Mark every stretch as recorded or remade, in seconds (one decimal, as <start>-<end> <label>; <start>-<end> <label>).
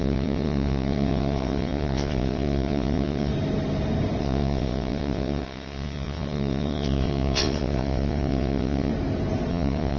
0.0-3.3 remade; 3.3-4.2 recorded; 4.2-8.9 remade; 8.9-9.5 recorded; 9.5-10.0 remade